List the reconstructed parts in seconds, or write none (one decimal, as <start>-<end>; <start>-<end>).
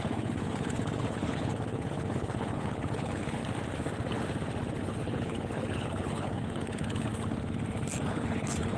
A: 0.0-3.4; 4.8-7.1; 8.1-8.8